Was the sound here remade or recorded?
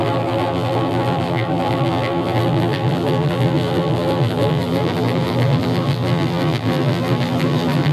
remade